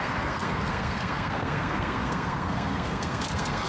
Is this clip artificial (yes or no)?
yes